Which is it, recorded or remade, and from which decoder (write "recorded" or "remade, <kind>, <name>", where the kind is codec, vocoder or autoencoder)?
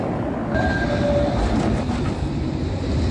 recorded